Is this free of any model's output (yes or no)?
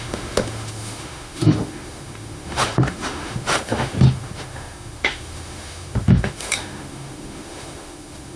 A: no